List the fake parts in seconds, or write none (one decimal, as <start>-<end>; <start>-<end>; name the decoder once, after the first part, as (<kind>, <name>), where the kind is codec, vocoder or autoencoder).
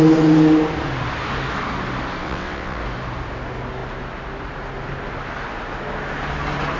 2.2-2.8 (vocoder, WaveNeXt)